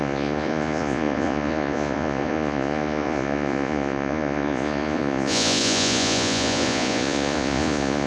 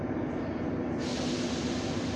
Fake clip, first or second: first